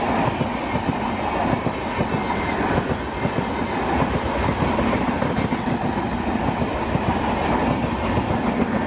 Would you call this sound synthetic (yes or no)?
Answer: no